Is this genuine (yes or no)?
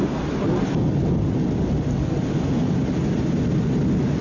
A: yes